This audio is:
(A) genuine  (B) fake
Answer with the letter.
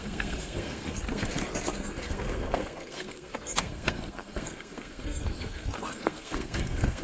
B